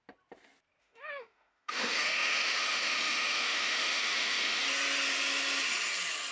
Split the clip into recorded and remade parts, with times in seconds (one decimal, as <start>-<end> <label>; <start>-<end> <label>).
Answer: 0.0-0.8 recorded; 0.8-4.6 remade; 4.6-6.3 recorded